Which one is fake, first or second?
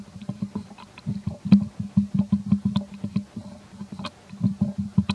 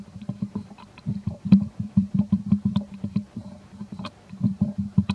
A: second